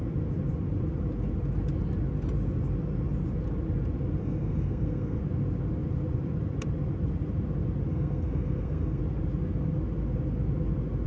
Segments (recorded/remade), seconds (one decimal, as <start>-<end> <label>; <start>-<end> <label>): 0.0-4.2 recorded; 4.2-5.2 remade; 5.2-7.9 recorded; 7.9-9.0 remade; 9.0-11.1 recorded